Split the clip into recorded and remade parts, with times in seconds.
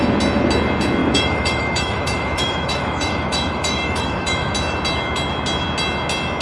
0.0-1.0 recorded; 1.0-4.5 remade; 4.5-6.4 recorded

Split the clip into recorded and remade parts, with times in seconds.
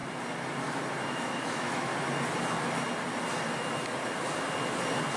0.0-1.1 recorded; 1.1-1.9 remade; 1.9-5.2 recorded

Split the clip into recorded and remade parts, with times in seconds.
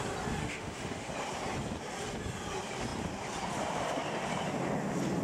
0.0-0.4 recorded; 0.4-1.1 remade; 1.1-5.2 recorded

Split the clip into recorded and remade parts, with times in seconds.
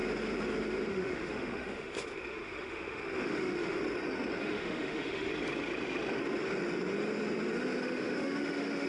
0.0-0.9 recorded; 0.9-3.8 remade; 3.8-4.4 recorded; 4.4-5.3 remade; 5.3-7.8 recorded; 7.8-8.9 remade